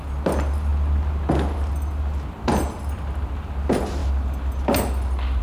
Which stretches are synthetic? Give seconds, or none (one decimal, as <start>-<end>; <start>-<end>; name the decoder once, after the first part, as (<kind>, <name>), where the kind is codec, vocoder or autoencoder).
none